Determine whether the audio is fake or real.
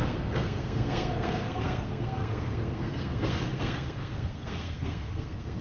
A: fake